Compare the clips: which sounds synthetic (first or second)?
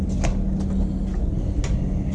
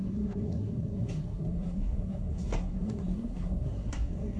second